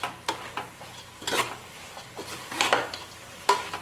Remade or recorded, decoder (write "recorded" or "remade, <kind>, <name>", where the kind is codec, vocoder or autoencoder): recorded